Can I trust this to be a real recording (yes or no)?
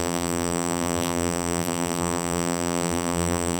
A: no